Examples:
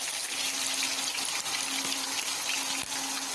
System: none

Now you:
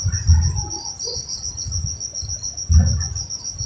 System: none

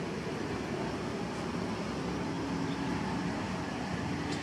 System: none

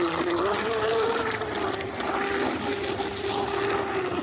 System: none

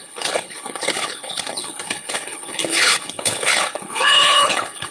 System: codec, HILCodec